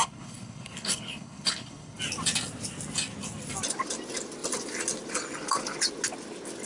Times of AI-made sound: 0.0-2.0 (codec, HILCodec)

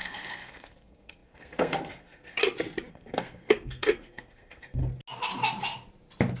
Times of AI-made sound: 0.0-2.4 (codec, SNAC); 2.9-4.8

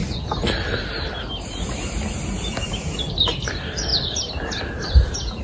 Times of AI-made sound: none

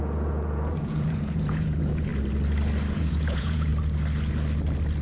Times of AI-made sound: 0.0-2.1 (vocoder, Vocos); 2.9-3.7

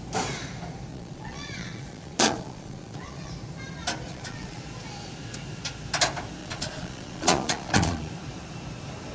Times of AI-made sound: 0.9-3.3 (vocoder, Vocos); 4.1-4.6; 6.4-8.1

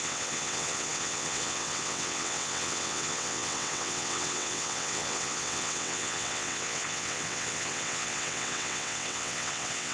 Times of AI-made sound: 0.0-9.9 (vocoder, WaveNeXt)

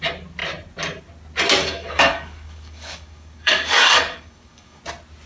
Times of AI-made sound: 1.6-4.8 (codec, DAC)

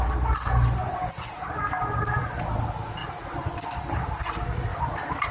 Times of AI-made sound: none